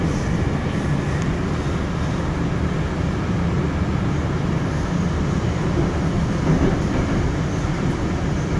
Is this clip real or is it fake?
real